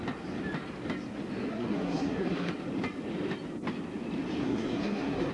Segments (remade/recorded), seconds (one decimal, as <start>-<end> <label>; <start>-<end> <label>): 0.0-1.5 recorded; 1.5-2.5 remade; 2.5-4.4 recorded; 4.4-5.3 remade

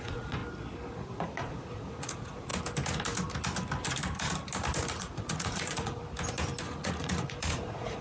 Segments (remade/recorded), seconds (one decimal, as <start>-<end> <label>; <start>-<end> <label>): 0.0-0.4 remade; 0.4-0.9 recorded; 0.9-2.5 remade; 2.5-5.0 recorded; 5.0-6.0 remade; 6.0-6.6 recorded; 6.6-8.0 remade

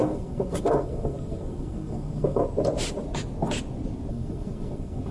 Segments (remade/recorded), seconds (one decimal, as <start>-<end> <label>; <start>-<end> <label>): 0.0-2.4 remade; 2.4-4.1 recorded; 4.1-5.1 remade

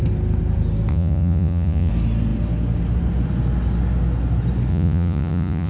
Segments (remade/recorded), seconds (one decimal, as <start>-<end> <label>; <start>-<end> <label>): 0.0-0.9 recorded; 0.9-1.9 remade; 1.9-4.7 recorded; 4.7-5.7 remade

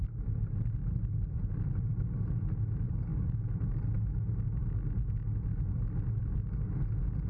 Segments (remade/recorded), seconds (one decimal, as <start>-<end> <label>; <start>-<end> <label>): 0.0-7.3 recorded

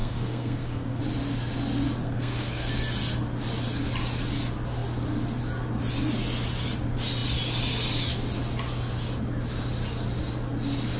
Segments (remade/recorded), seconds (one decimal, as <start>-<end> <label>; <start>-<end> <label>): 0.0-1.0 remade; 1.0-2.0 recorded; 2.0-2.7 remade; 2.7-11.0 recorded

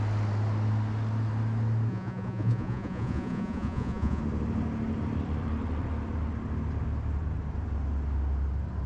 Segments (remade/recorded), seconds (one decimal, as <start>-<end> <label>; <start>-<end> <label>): 0.0-1.9 recorded; 1.9-4.2 remade; 4.2-8.9 recorded

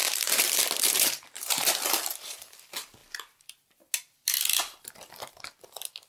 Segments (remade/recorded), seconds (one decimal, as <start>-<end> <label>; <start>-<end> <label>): 0.0-2.4 remade; 2.4-6.1 recorded